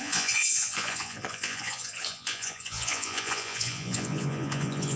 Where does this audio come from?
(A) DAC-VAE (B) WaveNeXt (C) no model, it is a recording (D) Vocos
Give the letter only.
D